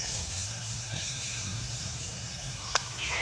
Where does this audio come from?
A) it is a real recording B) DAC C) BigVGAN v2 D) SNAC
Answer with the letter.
D